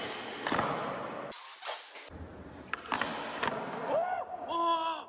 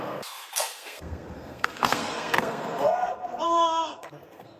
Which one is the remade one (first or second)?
second